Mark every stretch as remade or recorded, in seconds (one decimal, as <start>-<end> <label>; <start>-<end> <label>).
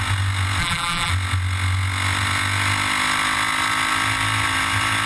0.0-0.6 recorded; 0.6-1.1 remade; 1.1-5.1 recorded